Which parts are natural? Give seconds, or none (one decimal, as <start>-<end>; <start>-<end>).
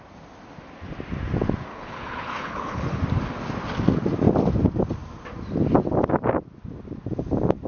0.0-1.7; 3.0-7.7